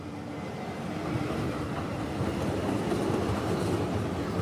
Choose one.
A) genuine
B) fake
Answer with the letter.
A